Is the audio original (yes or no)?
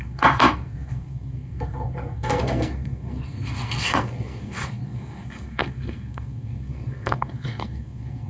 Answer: no